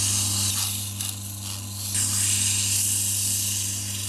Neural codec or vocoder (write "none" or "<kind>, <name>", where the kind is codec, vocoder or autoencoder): none